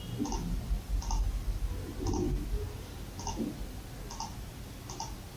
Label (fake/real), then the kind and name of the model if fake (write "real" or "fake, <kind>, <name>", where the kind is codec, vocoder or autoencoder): real